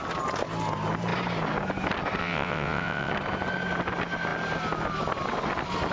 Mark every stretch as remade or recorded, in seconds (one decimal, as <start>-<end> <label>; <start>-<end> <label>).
0.0-2.2 recorded; 2.2-3.1 remade; 3.1-5.9 recorded